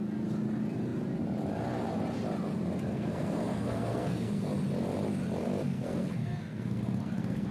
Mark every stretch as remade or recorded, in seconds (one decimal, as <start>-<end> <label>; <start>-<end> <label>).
0.0-2.9 recorded; 2.9-4.5 remade; 4.5-5.4 recorded; 5.4-7.5 remade